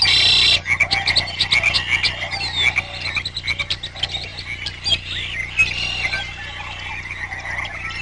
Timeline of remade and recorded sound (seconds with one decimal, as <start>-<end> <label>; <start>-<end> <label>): 0.0-8.0 recorded